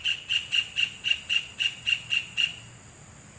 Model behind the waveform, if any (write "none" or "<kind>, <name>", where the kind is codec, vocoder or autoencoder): none